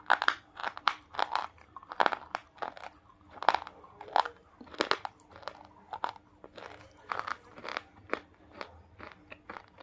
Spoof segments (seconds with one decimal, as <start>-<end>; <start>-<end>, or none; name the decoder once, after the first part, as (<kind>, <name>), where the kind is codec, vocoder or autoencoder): 0.6-1.9 (vocoder, BigVGAN v2); 7.7-8.5